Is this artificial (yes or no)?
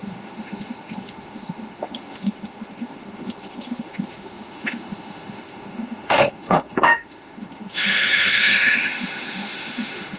yes